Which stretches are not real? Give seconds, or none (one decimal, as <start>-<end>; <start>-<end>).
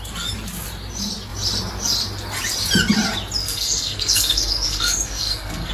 3.4-5.7